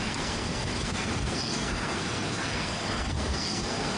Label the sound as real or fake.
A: fake